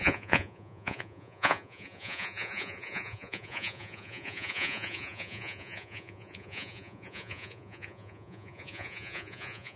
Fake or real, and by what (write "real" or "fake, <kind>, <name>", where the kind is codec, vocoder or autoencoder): fake, vocoder, Vocos